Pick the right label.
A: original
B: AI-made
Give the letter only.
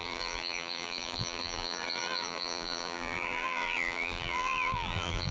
B